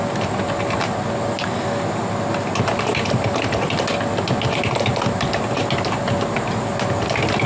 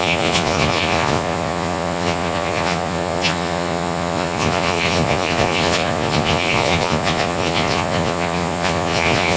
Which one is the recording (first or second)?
first